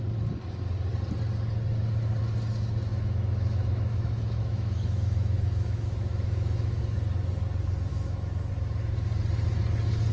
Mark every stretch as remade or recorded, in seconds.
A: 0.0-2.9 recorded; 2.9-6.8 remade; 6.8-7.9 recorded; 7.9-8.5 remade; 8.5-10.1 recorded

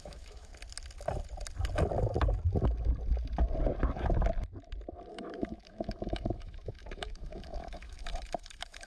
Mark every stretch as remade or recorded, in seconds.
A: 0.0-0.5 remade; 0.5-5.1 recorded; 5.1-8.9 remade